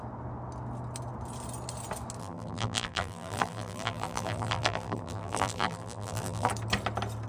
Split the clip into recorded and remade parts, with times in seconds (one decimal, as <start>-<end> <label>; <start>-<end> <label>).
0.0-2.2 recorded; 2.2-6.5 remade; 6.5-7.3 recorded